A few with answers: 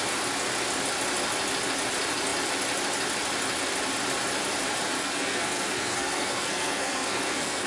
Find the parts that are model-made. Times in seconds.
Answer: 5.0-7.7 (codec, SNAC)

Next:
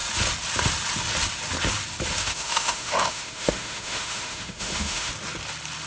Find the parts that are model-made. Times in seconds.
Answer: 2.2-5.1 (autoencoder, DAC-VAE)

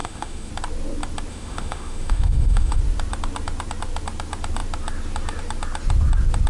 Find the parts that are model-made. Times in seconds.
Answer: 0.0-0.5 (autoencoder, DAC-VAE); 1.3-2.8

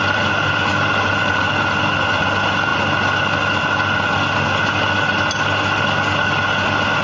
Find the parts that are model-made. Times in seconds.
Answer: none